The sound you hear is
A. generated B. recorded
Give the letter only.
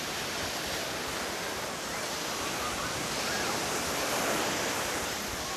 B